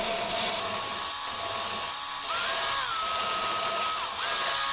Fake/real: real